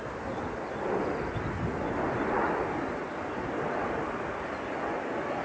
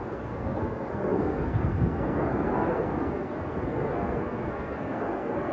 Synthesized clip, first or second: second